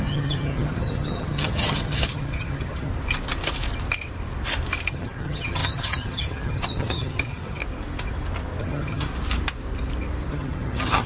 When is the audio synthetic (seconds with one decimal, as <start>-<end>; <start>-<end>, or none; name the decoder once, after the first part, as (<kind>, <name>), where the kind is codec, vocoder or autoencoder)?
0.0-2.9 (vocoder, HiFi-GAN); 4.9-7.6; 8.6-9.1; 10.3-11.1